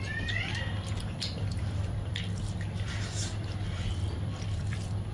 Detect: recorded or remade remade